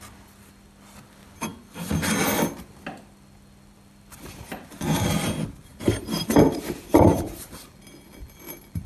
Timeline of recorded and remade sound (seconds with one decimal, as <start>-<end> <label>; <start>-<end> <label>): 0.0-5.7 recorded; 5.7-7.5 remade; 7.5-8.9 recorded